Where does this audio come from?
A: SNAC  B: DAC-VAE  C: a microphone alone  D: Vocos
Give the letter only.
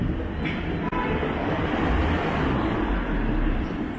C